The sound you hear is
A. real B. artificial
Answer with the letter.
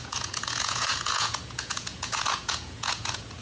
B